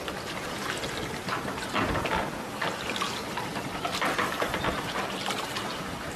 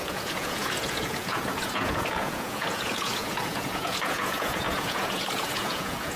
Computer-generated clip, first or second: second